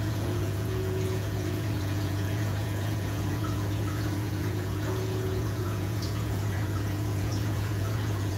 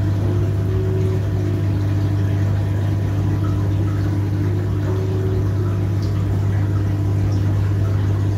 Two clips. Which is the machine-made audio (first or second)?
first